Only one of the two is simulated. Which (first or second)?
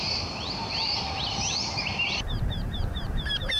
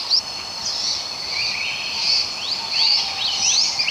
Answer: first